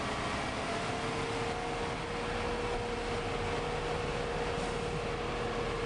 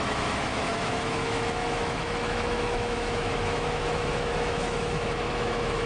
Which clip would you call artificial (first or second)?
second